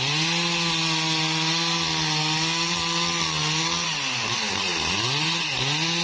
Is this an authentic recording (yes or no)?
yes